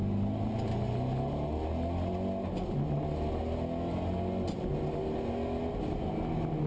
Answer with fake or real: real